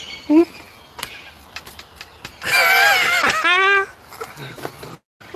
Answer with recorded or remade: recorded